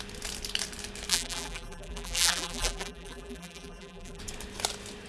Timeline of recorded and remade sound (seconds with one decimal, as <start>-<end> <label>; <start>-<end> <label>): 0.0-1.1 recorded; 1.1-4.2 remade; 4.2-5.1 recorded